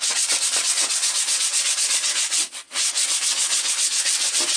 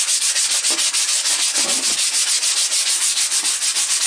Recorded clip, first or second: second